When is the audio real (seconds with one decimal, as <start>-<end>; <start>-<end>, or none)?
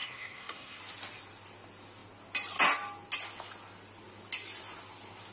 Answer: 0.8-5.3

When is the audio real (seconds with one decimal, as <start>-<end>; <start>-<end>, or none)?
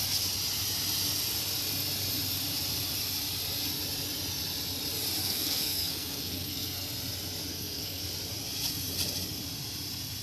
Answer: 0.0-5.2; 6.9-7.5; 8.0-10.2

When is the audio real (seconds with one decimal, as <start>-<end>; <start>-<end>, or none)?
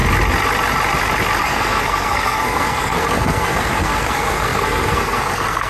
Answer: 0.0-1.4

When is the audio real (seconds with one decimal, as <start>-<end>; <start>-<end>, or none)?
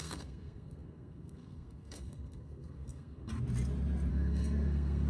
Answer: 3.3-4.1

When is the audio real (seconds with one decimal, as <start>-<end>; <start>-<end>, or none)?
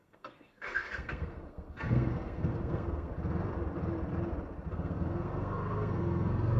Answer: 3.1-4.7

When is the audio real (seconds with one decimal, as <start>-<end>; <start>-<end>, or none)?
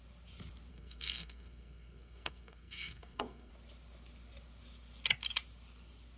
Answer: 0.0-0.7; 3.5-6.2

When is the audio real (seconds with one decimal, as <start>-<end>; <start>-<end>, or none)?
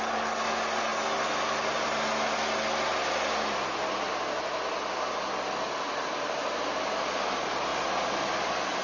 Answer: 0.0-8.8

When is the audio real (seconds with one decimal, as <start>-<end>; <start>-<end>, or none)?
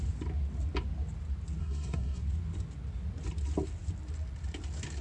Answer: 0.0-1.6; 2.2-5.0